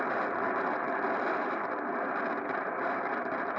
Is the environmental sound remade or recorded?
recorded